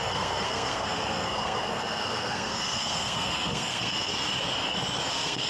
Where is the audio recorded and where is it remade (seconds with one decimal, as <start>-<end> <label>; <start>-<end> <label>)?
0.0-4.1 remade; 4.1-5.1 recorded; 5.1-5.5 remade